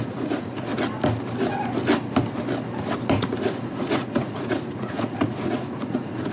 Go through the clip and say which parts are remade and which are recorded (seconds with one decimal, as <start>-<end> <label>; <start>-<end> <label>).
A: 0.0-0.7 remade; 0.7-3.1 recorded; 3.1-6.3 remade